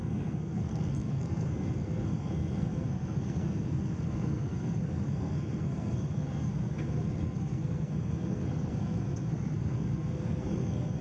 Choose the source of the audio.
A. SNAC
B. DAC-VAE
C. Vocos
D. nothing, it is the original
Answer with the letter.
A